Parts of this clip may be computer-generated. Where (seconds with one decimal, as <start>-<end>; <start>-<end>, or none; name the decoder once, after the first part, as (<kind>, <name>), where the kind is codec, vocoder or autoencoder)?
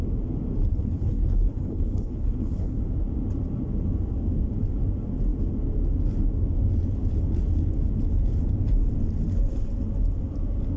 0.7-2.8 (codec, HILCodec)